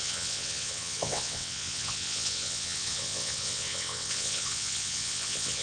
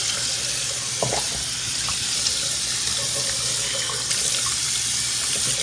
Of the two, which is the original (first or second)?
second